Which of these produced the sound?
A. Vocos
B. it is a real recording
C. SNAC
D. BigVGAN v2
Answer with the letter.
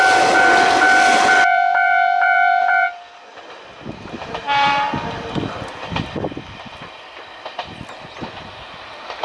D